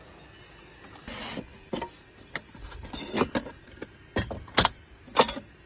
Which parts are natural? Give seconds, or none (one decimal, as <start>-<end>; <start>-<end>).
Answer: 0.0-5.7